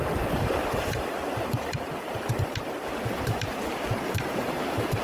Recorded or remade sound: remade